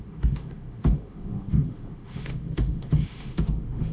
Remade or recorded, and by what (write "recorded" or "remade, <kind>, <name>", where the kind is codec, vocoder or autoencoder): remade, autoencoder, DAC-VAE